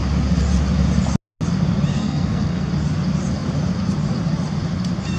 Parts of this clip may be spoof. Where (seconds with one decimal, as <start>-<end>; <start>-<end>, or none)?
1.9-2.7